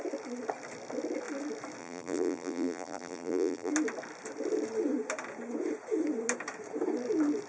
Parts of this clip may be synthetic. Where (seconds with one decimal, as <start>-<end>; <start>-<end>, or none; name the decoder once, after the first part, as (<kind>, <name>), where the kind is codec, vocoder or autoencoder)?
1.8-3.7 (vocoder, BigVGAN v2)

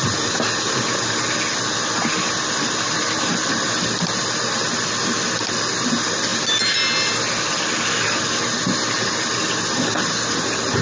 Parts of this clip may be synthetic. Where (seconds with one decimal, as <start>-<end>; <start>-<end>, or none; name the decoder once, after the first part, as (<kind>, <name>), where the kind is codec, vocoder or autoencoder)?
none

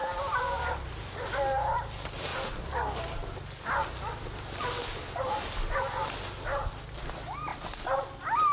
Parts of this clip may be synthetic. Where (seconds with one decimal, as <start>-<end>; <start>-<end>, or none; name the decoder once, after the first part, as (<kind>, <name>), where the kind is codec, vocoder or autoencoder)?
none

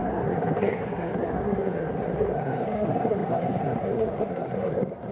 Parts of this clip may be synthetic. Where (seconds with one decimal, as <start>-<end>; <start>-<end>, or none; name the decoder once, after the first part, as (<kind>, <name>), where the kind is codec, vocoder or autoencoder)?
0.0-5.1 (codec, SNAC)

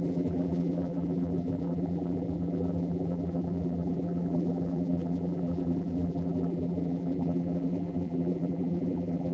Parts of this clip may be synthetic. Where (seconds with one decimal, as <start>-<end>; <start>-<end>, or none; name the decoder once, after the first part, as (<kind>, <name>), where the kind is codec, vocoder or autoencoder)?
0.0-9.3 (vocoder, BigVGAN v2)

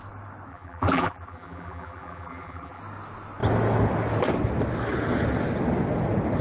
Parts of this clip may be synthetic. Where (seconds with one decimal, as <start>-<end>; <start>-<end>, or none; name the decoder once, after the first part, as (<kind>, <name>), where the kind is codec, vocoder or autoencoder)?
0.5-2.8 (vocoder, BigVGAN v2)

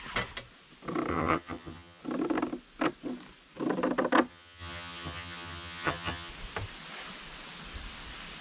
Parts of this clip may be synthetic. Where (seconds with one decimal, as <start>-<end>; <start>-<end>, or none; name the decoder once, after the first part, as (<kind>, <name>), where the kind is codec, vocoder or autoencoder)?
1.1-2.0 (vocoder, HiFi-GAN); 4.3-6.3

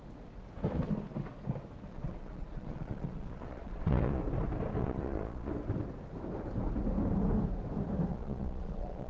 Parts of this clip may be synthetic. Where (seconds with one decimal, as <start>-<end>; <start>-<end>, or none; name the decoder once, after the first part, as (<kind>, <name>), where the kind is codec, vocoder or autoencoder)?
1.9-4.2 (vocoder, Vocos); 4.8-5.5; 8.1-9.1